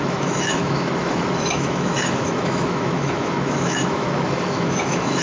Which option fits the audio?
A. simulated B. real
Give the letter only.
A